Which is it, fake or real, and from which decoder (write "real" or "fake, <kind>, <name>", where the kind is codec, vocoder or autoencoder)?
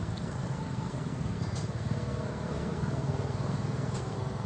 fake, codec, SNAC